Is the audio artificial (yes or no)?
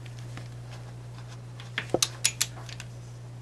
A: no